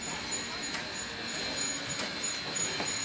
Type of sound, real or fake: real